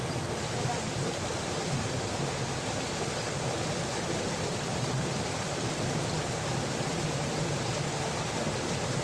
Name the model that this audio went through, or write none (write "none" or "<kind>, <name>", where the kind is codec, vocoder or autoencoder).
none